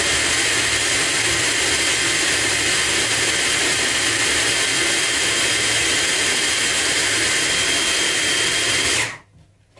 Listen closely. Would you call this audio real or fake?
real